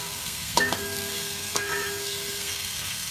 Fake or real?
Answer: fake